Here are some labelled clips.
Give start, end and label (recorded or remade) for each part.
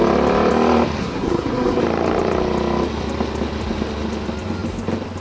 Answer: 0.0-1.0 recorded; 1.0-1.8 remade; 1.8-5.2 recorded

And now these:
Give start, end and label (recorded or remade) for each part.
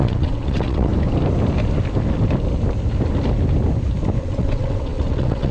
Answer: 0.0-0.9 remade; 0.9-4.2 recorded; 4.2-5.5 remade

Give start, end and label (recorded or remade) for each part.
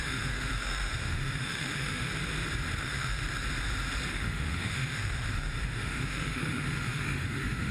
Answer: 0.0-2.1 remade; 2.1-2.8 recorded; 2.8-3.2 remade; 3.2-4.1 recorded; 4.1-7.7 remade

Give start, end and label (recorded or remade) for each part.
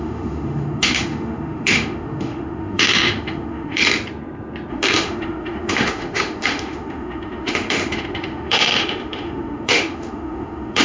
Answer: 0.0-3.8 remade; 3.8-4.7 recorded; 4.7-10.8 remade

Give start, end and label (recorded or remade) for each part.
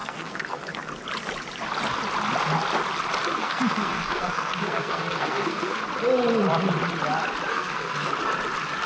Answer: 0.0-0.9 remade; 0.9-3.4 recorded; 3.4-5.8 remade; 5.8-7.5 recorded; 7.5-8.1 remade; 8.1-8.9 recorded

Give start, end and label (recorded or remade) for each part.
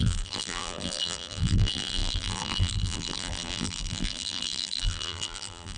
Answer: 0.0-5.8 remade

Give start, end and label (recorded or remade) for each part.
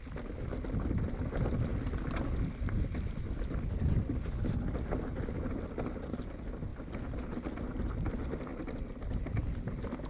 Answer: 0.0-1.7 recorded; 1.7-4.9 remade; 4.9-6.7 recorded; 6.7-8.1 remade; 8.1-10.1 recorded